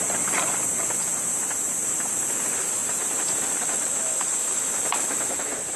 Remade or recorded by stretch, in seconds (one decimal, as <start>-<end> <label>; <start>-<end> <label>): 0.0-1.1 recorded; 1.1-2.0 remade; 2.0-2.8 recorded; 2.8-3.4 remade; 3.4-5.8 recorded

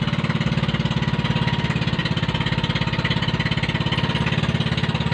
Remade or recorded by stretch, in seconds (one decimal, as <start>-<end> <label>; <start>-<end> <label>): 0.0-5.1 recorded

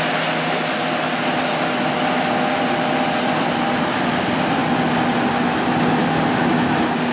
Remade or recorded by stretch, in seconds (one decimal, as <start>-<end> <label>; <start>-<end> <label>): 0.0-7.1 recorded

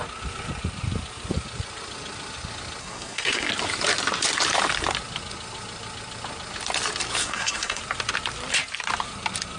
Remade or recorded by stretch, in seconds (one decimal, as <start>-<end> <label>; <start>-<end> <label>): 0.0-2.8 recorded; 2.8-3.5 remade; 3.5-7.2 recorded; 7.2-7.8 remade; 7.8-9.6 recorded

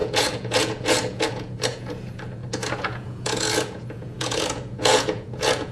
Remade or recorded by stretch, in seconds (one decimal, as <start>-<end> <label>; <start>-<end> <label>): 0.0-5.7 remade

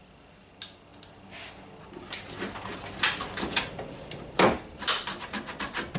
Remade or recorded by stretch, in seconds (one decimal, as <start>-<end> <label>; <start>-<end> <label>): 0.0-6.0 recorded